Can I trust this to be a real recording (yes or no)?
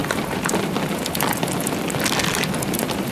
yes